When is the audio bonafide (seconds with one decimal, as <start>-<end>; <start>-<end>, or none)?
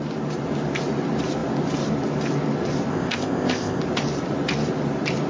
0.0-2.9; 3.8-5.3